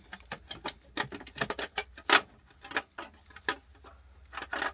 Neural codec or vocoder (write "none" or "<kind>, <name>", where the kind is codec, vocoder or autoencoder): none